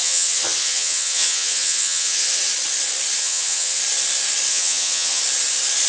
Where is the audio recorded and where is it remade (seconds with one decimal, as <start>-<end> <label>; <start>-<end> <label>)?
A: 0.0-2.4 remade; 2.4-3.2 recorded; 3.2-3.8 remade; 3.8-4.5 recorded; 4.5-5.2 remade; 5.2-5.9 recorded